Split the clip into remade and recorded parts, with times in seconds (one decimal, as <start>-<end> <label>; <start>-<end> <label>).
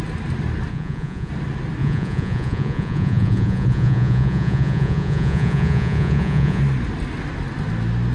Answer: 0.0-0.7 recorded; 0.7-1.3 remade; 1.3-1.8 recorded; 1.8-6.6 remade; 6.6-8.1 recorded